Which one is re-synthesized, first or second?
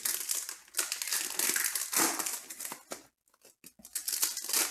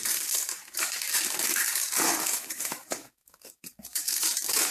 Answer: second